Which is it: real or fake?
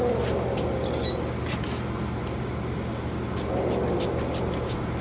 real